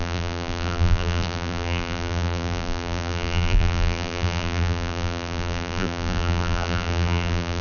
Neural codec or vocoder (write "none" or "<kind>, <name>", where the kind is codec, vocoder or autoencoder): vocoder, BigVGAN v2